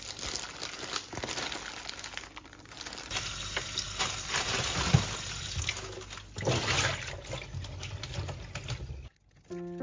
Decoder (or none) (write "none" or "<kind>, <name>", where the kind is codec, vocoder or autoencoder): none